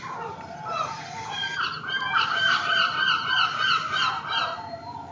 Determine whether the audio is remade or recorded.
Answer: recorded